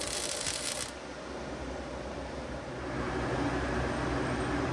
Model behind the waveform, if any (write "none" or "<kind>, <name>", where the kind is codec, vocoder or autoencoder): none